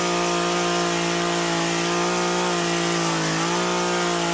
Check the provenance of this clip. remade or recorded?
recorded